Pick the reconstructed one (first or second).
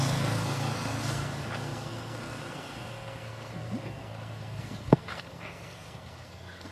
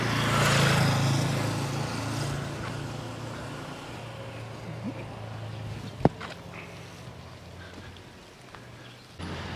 first